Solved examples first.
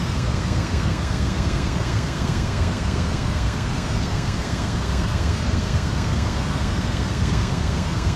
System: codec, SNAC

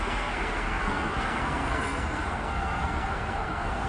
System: codec, SNAC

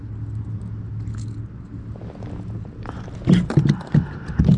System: none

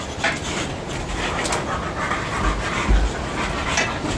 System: none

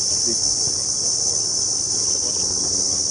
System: none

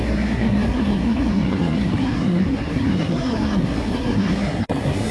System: codec, SNAC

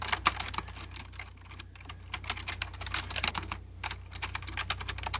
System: none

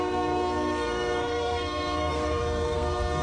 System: codec, SNAC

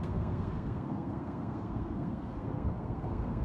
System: codec, SNAC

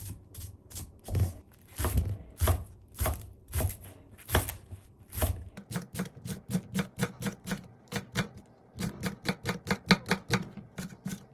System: none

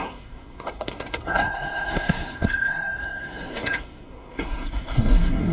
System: codec, SNAC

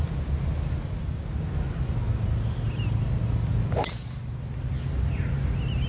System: none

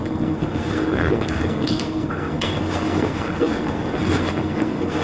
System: codec, SNAC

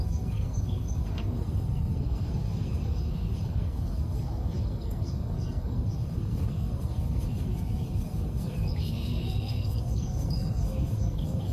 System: codec, SNAC